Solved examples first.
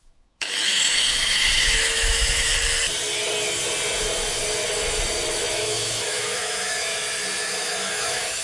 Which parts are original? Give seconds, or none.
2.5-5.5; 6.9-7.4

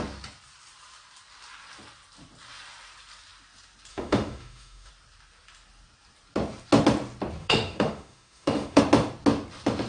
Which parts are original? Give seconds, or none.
0.0-3.9; 4.9-7.4; 8.8-9.9